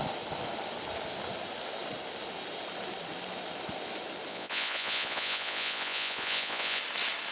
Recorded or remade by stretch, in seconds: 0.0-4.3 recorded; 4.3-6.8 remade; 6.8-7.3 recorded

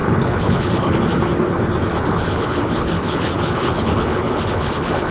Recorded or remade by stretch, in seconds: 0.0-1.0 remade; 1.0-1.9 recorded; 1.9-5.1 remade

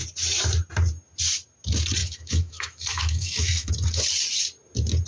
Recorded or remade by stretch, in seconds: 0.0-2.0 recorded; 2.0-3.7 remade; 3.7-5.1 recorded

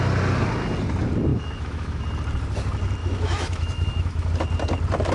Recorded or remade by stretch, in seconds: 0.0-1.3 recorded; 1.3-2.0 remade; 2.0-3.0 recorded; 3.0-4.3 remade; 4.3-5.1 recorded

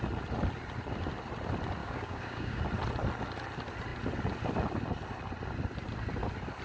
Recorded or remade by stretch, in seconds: 0.0-1.8 recorded; 1.8-2.6 remade; 2.6-6.6 recorded